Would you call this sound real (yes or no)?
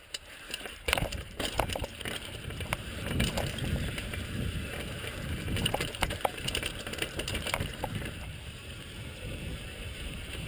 no